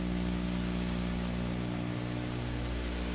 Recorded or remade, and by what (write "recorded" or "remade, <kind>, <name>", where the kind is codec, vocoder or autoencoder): recorded